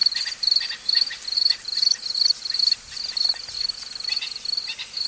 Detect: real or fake real